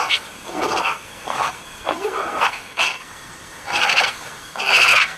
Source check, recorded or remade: remade